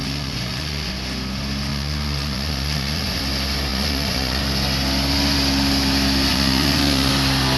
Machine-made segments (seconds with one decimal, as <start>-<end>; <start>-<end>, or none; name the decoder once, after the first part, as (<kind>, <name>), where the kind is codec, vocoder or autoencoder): 0.0-0.9 (vocoder, Vocos); 1.7-3.2; 3.7-4.4; 6.3-7.1